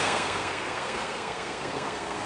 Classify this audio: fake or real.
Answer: fake